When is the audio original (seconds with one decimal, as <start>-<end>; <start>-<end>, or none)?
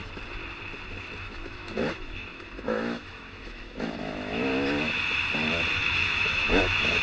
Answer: 0.0-1.2; 4.5-5.8